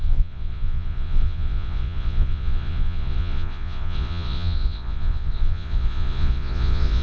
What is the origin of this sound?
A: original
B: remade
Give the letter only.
B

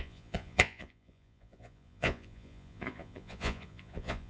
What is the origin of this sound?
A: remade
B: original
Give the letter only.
A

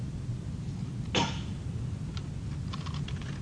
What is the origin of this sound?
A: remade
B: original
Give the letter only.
B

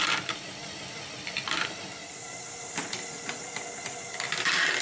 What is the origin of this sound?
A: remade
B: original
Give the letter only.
B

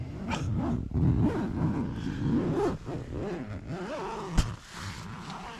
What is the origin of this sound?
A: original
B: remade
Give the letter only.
A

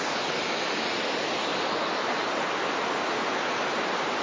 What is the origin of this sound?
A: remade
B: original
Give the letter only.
B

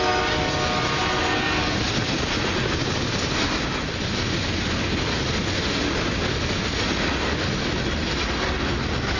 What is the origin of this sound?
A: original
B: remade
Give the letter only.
A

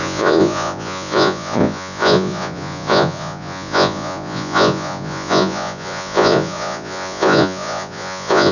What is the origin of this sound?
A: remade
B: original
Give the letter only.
A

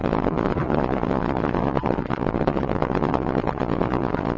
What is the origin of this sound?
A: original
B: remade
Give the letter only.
B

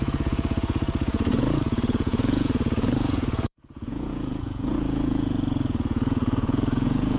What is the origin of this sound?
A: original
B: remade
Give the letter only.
B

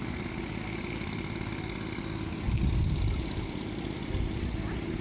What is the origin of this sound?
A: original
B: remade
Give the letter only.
A